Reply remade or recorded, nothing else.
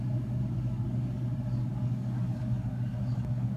remade